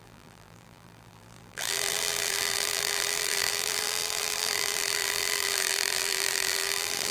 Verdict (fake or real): fake